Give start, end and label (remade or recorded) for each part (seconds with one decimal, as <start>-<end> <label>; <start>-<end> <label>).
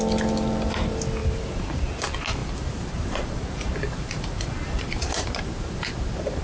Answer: 0.0-1.2 recorded; 1.2-1.9 remade; 1.9-2.4 recorded; 2.4-6.4 remade